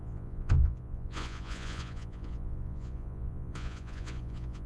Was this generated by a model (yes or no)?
yes